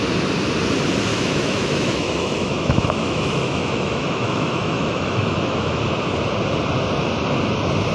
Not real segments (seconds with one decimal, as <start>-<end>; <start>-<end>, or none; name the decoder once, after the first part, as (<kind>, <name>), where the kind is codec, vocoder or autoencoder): 1.1-5.8 (autoencoder, DAC-VAE)